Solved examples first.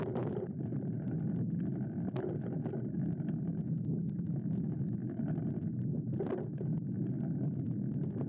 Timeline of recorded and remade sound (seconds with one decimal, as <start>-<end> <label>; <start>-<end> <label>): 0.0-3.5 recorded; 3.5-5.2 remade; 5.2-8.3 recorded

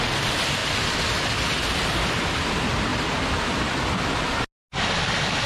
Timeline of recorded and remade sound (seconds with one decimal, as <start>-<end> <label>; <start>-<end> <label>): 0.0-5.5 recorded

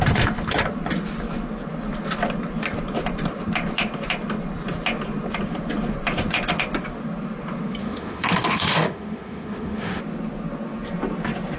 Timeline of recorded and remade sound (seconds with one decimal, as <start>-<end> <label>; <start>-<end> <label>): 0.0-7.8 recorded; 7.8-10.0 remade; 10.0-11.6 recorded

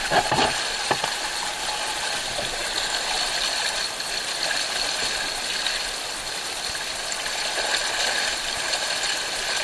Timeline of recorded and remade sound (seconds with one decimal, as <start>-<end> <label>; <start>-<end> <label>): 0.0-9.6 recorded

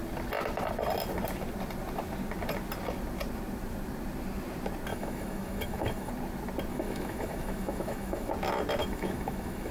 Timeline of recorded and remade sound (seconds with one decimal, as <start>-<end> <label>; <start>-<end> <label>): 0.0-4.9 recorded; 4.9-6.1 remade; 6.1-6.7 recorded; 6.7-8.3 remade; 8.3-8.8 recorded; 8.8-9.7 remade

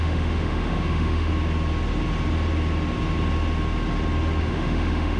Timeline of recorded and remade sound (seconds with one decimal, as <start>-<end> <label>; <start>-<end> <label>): 0.0-1.3 remade; 1.3-4.4 recorded; 4.4-5.2 remade

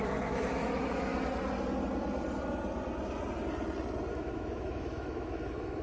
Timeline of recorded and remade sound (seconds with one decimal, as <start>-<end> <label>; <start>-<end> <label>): 0.0-1.1 remade; 1.1-4.1 recorded; 4.1-5.8 remade

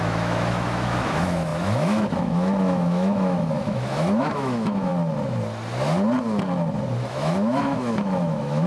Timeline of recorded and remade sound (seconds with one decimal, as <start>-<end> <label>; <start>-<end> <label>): 0.0-4.9 remade; 4.9-7.1 recorded; 7.1-8.7 remade